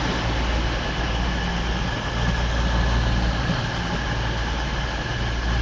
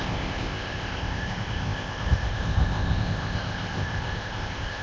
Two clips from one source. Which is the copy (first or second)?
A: second